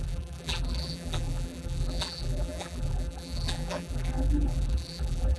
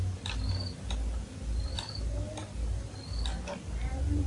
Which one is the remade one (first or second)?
first